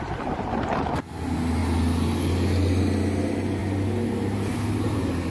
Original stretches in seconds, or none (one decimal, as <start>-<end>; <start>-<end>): 0.0-5.3

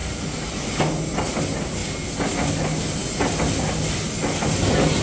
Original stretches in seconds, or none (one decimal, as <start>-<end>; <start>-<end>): 0.0-5.0

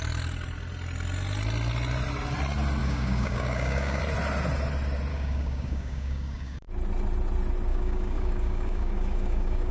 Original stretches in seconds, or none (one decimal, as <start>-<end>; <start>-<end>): 0.0-2.8; 4.0-5.1; 6.7-7.7

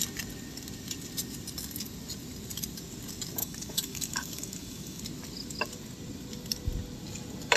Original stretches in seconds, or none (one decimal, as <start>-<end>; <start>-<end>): 0.0-3.4; 5.0-7.6

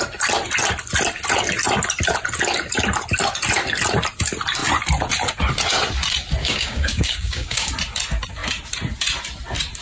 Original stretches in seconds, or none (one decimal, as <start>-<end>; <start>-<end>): 0.0-6.4; 7.7-9.8